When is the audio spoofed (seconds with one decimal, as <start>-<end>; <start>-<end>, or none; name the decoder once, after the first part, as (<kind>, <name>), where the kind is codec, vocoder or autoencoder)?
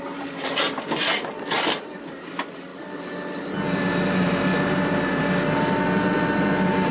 none